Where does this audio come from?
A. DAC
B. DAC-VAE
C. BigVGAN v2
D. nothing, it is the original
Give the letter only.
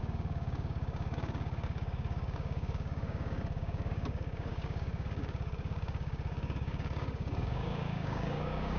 A